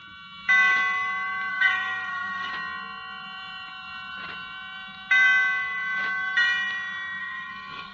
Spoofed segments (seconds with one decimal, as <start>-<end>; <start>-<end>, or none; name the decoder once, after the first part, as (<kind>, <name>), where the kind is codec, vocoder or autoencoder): 1.5-2.5 (codec, SNAC); 7.2-7.9